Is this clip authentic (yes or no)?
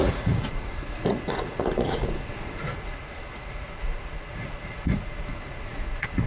no